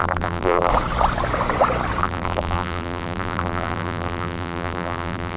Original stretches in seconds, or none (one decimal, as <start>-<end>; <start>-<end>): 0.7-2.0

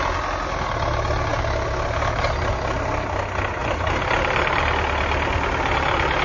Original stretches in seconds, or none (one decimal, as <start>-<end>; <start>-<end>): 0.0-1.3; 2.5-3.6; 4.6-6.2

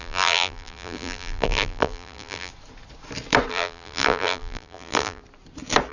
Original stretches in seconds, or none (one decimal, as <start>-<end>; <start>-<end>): 2.5-3.5; 5.2-5.9